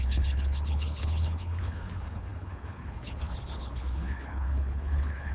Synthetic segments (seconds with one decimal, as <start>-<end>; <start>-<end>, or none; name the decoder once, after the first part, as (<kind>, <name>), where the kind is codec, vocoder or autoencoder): 0.0-5.3 (codec, HILCodec)